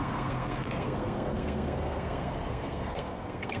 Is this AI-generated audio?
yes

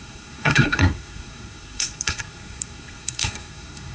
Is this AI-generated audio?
yes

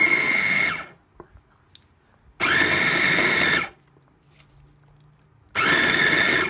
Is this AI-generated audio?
no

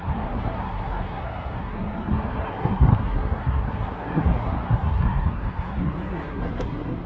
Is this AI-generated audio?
yes